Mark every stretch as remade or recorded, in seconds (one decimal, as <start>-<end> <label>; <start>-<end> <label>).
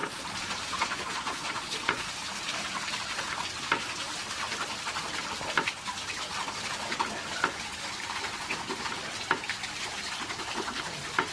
0.0-2.1 remade; 2.1-11.3 recorded